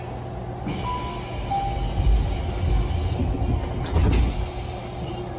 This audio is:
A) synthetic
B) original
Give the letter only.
B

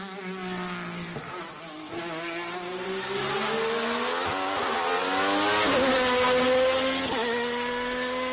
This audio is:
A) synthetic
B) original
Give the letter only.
B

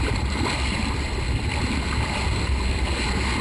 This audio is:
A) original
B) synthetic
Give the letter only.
A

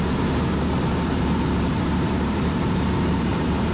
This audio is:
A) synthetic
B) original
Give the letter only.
A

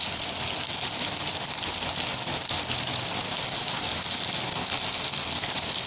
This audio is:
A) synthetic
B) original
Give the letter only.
B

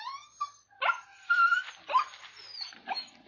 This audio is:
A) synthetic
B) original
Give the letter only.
B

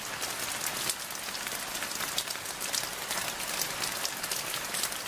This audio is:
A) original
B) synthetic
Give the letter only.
A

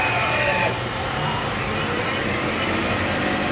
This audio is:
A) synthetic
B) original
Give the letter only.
B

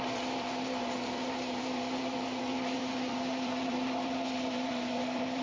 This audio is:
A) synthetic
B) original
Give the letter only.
A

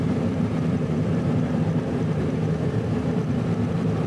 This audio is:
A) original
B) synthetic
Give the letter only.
B